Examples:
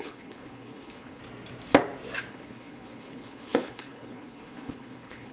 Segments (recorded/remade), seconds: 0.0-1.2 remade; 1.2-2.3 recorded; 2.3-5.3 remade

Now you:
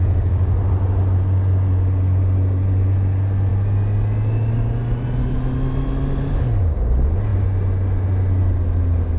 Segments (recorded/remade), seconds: 0.0-9.2 recorded

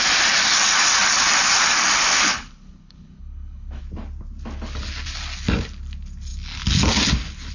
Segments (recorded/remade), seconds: 0.0-2.1 recorded; 2.1-3.8 remade; 3.8-7.5 recorded

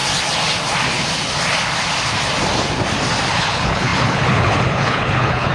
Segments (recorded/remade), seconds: 0.0-3.3 recorded; 3.3-5.5 remade